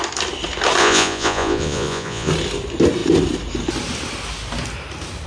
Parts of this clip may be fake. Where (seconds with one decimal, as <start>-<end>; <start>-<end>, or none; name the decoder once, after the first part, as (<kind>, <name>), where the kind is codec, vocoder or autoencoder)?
0.8-2.3 (vocoder, Vocos)